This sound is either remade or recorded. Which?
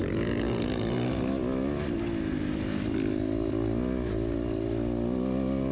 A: recorded